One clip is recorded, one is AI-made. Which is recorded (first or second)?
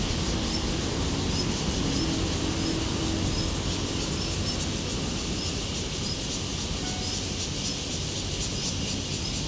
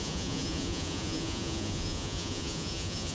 first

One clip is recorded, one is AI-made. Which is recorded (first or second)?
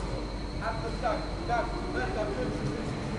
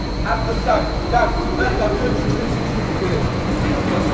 first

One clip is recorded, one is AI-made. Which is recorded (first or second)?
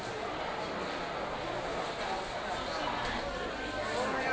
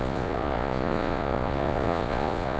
first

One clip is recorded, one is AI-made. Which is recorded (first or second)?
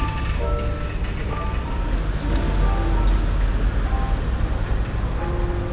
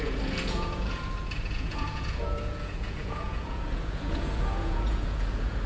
first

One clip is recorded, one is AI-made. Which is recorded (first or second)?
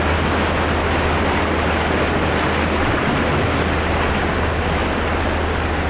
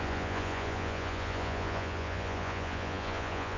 first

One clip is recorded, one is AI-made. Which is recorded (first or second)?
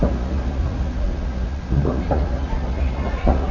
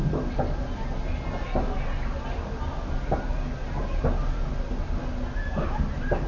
second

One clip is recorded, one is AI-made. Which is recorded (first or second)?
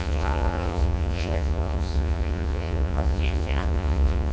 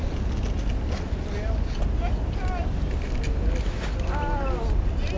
second